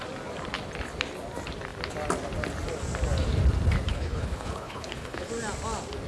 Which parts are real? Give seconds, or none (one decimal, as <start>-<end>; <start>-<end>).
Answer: 0.0-3.9; 5.3-6.1